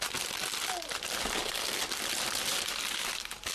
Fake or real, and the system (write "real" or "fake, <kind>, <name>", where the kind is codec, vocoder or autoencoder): real